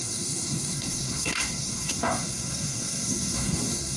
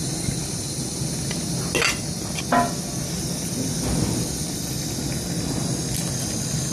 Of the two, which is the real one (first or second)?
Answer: second